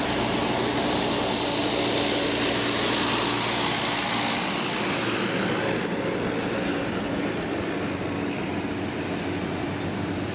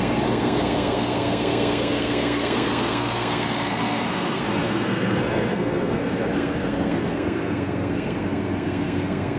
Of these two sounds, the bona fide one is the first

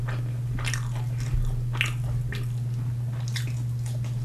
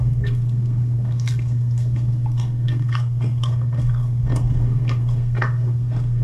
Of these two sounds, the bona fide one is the first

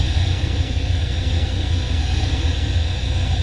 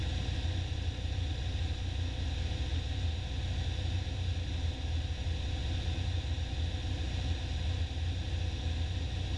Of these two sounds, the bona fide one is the second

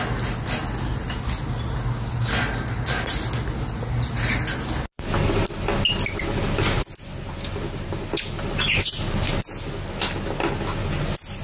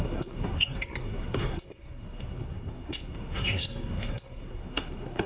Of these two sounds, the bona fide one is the first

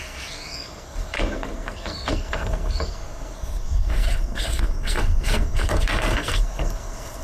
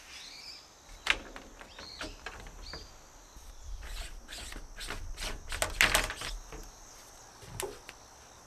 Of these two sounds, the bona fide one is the second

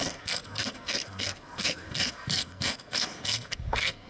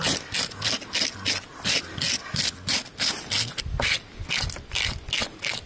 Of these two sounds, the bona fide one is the second